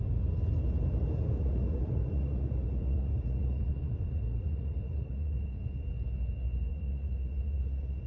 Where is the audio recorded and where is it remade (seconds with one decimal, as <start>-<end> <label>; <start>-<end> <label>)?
0.0-1.4 recorded; 1.4-5.6 remade; 5.6-6.7 recorded; 6.7-8.1 remade